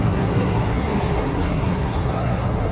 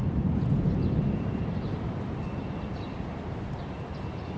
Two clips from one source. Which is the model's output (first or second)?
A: first